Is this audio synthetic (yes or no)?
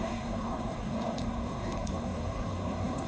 yes